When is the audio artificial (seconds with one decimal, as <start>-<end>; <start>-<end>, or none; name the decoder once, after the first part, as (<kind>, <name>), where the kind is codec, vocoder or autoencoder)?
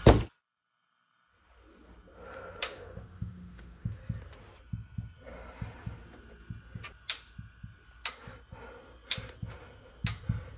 2.6-4.0 (autoencoder, DAC-VAE)